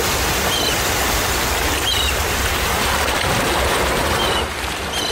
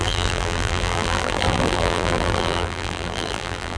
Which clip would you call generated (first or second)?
second